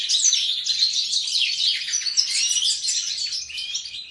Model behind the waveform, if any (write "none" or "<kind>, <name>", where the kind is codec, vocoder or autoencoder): none